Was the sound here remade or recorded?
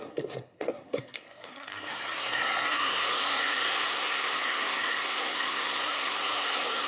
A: remade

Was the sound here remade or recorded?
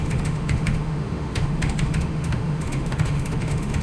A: remade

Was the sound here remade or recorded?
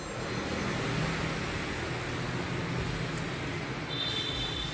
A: recorded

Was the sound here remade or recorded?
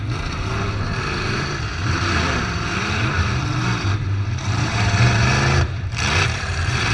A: remade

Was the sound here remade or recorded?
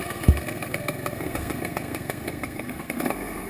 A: remade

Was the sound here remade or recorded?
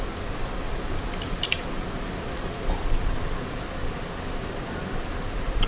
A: recorded